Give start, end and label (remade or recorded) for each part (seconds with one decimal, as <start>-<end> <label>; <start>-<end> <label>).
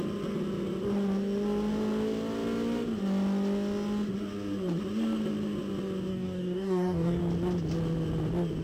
0.0-6.1 recorded; 6.1-7.2 remade; 7.2-8.6 recorded